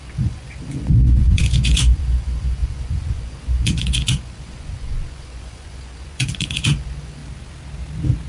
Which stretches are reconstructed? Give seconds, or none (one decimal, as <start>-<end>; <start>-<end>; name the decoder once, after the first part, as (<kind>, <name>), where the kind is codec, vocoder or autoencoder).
0.0-7.2 (vocoder, Vocos)